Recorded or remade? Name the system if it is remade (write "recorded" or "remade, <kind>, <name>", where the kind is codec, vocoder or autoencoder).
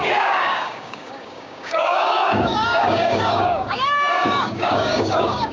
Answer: remade, codec, DAC